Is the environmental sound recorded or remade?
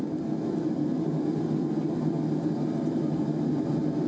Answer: recorded